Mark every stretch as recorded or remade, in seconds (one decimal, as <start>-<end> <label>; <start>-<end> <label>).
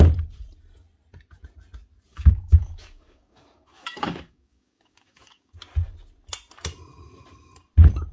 0.0-2.1 recorded; 2.1-5.5 remade; 5.5-8.1 recorded